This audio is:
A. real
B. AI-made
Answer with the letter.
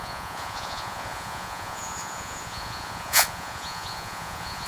B